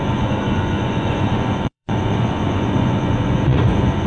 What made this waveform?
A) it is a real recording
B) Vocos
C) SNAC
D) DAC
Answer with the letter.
B